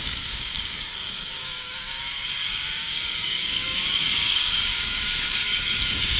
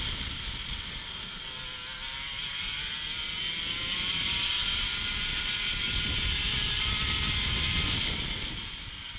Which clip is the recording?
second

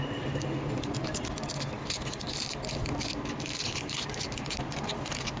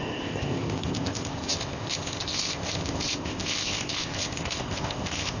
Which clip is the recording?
first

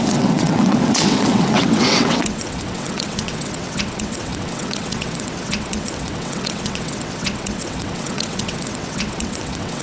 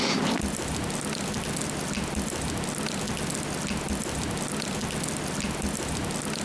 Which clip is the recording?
second